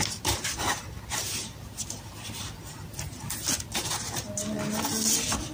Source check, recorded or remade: recorded